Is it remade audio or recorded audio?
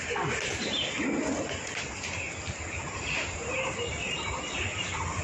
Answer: recorded